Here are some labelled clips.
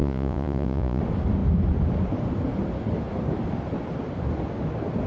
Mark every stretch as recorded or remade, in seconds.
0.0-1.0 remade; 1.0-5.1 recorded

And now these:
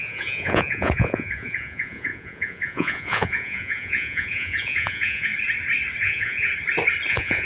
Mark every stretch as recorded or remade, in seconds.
0.0-5.3 remade; 5.3-6.0 recorded; 6.0-6.5 remade; 6.5-7.1 recorded; 7.1-7.5 remade

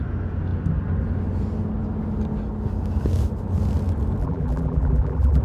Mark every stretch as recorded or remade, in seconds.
0.0-4.2 recorded; 4.2-5.4 remade

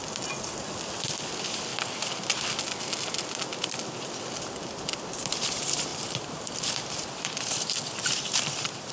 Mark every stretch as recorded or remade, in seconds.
0.0-1.7 remade; 1.7-3.2 recorded; 3.2-5.9 remade; 5.9-6.7 recorded; 6.7-8.9 remade